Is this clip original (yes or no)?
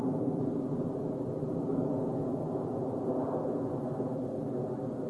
yes